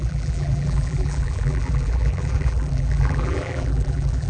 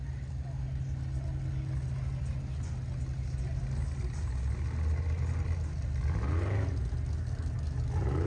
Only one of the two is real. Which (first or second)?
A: second